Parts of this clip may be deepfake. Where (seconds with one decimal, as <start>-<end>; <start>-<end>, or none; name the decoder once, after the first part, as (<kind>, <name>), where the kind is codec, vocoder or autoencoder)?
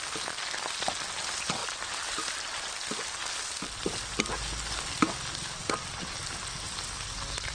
none